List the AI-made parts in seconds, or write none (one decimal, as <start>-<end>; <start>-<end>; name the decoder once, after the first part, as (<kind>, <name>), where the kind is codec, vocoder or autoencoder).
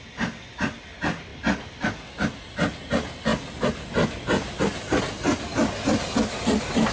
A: none